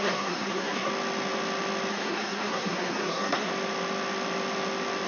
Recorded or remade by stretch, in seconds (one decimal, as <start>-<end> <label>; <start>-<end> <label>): 0.0-0.9 remade; 0.9-1.9 recorded; 1.9-3.5 remade; 3.5-5.1 recorded